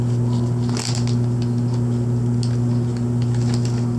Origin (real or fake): real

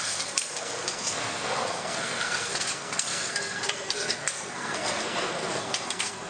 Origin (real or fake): fake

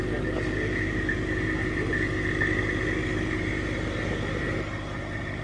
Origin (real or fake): real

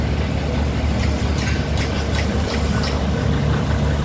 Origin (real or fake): real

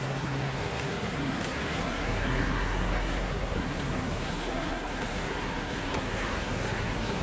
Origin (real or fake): fake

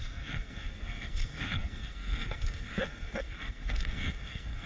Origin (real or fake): fake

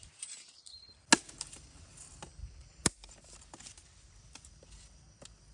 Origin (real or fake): real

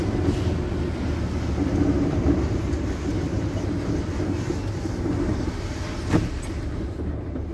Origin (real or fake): real